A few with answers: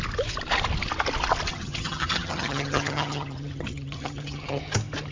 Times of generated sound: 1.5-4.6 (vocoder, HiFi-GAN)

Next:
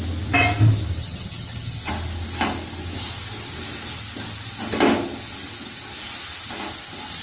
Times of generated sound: 1.0-1.9 (vocoder, HiFi-GAN)

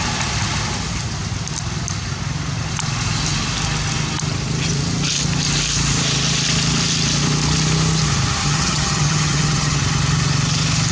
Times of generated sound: 8.4-9.8 (vocoder, HiFi-GAN)

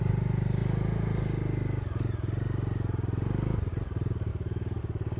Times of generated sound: none

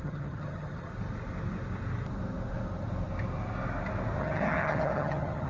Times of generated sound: 0.0-0.9 (vocoder, HiFi-GAN); 4.2-5.5